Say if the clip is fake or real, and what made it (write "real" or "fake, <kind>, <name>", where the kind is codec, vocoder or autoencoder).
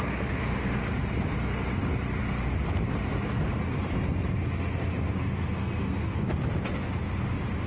real